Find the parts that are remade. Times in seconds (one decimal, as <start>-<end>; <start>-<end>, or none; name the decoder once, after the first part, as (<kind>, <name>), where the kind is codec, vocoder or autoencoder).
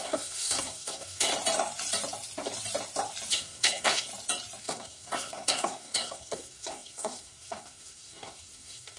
0.0-1.3 (codec, SNAC); 3.3-4.1; 4.6-9.0